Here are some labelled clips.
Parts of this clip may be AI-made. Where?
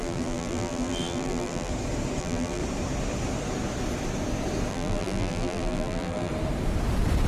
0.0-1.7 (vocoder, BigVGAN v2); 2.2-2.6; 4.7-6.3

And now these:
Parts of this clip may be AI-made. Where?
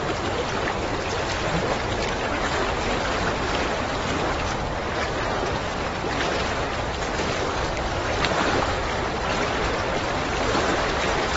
none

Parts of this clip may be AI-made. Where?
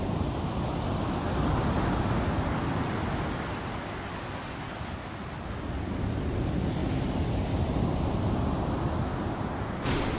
6.8-7.7 (vocoder, BigVGAN v2); 9.1-10.2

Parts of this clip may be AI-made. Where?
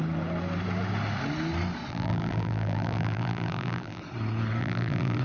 1.9-4.0 (vocoder, BigVGAN v2); 4.6-5.2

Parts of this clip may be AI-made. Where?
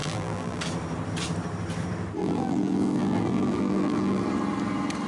0.0-0.6 (vocoder, BigVGAN v2); 2.2-4.2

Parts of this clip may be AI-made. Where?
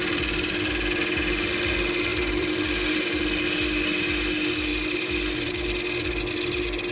0.0-0.7 (vocoder, BigVGAN v2); 2.1-3.4; 4.7-5.5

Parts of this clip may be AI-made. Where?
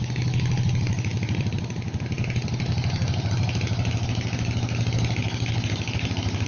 1.1-3.3 (vocoder, BigVGAN v2)